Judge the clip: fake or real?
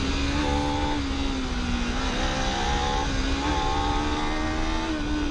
real